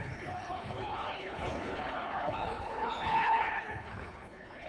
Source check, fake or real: fake